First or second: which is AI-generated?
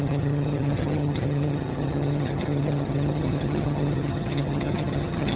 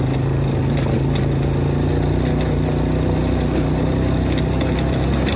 first